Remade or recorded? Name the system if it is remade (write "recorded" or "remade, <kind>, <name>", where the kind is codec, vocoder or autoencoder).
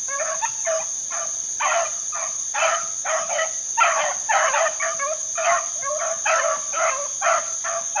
recorded